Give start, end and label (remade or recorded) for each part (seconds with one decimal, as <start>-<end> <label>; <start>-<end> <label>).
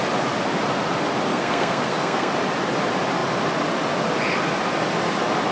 0.0-1.3 recorded; 1.3-2.3 remade; 2.3-5.5 recorded